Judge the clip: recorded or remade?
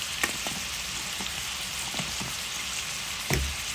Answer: recorded